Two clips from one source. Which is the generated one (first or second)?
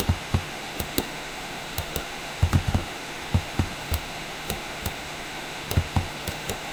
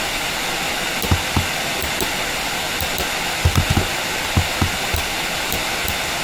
first